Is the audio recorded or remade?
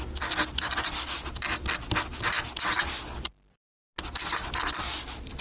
recorded